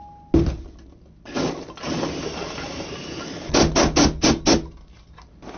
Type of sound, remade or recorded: recorded